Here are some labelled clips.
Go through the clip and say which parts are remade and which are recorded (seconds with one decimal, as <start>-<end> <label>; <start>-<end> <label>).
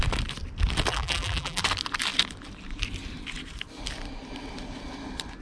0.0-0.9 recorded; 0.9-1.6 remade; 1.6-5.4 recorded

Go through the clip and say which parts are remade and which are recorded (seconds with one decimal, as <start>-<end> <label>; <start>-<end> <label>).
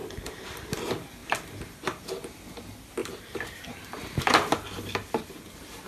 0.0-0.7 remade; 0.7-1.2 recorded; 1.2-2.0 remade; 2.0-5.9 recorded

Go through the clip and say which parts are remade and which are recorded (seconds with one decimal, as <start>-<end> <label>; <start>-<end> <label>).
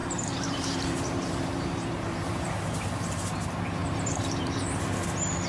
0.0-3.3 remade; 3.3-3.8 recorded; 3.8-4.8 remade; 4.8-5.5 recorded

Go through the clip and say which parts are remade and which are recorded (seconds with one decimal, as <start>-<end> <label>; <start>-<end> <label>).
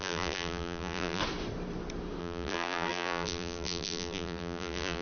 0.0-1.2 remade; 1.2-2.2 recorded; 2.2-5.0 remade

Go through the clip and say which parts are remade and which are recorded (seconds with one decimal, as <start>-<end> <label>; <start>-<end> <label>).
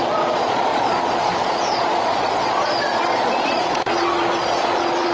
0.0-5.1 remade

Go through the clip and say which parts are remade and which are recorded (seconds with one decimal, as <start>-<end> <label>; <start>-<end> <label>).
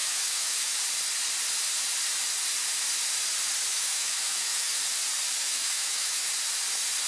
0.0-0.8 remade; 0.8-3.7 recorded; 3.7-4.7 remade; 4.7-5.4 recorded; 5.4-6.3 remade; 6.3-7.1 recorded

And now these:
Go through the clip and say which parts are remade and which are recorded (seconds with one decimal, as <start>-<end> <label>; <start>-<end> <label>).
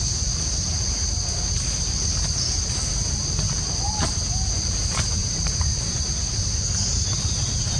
0.0-5.2 recorded; 5.2-5.8 remade; 5.8-7.8 recorded